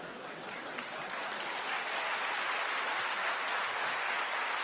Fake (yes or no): no